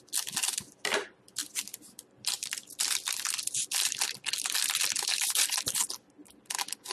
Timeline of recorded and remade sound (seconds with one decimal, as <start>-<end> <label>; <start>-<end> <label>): 0.0-1.4 recorded; 1.4-4.8 remade; 4.8-6.9 recorded